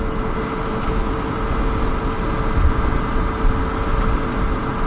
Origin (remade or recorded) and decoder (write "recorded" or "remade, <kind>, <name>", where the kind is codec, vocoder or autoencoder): recorded